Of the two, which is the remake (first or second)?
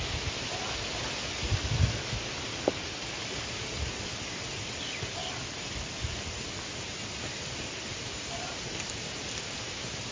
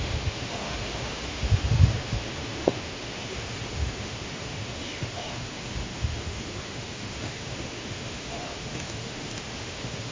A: second